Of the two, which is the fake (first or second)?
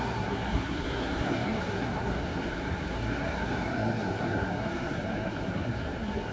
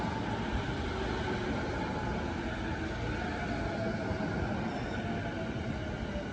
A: first